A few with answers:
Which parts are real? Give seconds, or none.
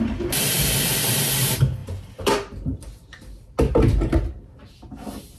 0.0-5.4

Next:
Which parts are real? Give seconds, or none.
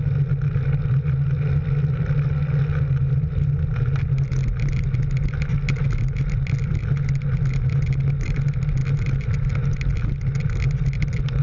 0.0-11.4